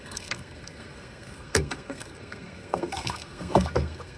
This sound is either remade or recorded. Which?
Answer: remade